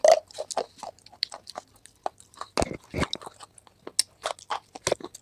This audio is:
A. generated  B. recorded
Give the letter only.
B